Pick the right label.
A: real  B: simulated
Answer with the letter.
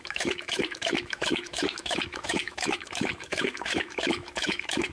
B